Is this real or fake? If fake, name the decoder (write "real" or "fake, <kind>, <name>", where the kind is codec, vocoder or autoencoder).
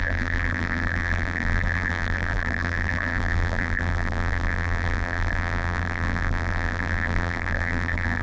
fake, vocoder, BigVGAN v2